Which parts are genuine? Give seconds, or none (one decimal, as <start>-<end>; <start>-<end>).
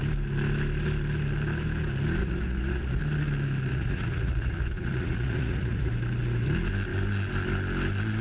0.0-2.2; 3.0-3.7; 5.9-8.2